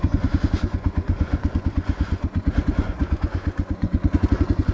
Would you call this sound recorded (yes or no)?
no